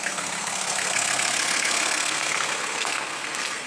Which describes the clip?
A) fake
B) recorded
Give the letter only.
A